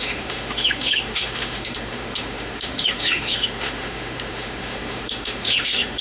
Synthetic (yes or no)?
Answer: yes